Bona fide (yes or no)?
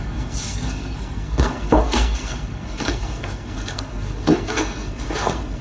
no